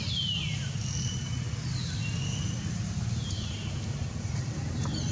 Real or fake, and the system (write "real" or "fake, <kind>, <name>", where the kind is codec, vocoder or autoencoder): real